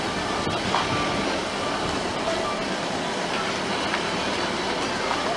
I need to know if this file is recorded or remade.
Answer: recorded